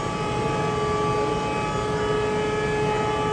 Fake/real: real